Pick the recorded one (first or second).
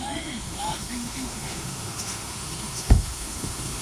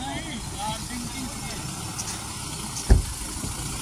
second